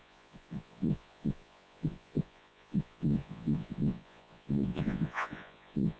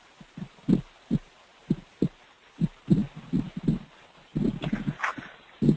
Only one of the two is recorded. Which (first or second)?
second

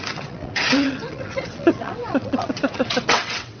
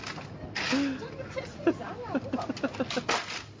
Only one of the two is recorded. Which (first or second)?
second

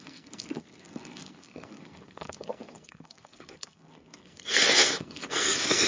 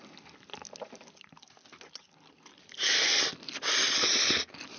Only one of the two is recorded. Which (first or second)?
second